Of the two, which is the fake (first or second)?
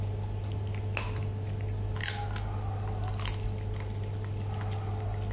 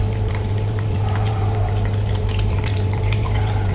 second